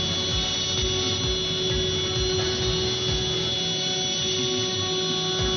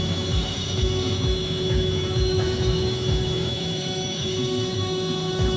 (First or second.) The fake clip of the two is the second